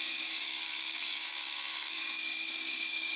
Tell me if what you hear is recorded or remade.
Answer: remade